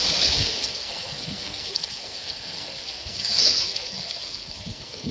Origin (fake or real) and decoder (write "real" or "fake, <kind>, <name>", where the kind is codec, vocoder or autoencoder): fake, codec, SNAC